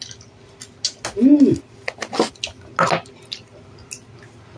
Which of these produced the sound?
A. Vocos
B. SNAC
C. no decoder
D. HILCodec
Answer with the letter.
C